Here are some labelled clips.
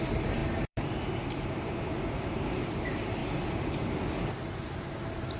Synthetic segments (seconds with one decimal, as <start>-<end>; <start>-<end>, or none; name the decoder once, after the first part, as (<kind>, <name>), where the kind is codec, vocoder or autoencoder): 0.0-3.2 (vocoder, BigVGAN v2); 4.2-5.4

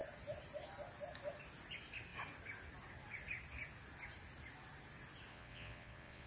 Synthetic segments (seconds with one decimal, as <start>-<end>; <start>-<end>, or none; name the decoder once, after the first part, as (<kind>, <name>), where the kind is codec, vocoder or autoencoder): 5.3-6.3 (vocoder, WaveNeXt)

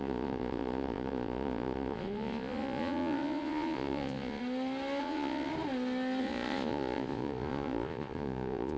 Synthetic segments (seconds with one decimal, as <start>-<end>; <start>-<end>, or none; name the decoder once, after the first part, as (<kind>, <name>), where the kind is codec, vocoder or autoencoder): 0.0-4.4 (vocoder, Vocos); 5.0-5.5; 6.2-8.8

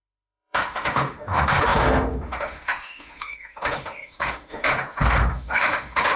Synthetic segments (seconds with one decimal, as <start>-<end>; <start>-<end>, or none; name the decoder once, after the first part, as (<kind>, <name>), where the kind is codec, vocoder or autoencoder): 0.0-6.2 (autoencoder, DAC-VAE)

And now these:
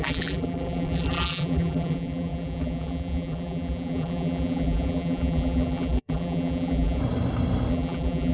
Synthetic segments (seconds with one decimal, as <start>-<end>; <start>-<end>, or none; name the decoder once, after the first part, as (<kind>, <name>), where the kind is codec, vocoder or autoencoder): 0.0-7.0 (vocoder, BigVGAN v2); 7.7-8.3